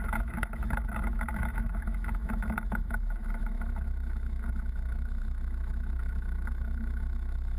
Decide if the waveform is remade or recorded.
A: remade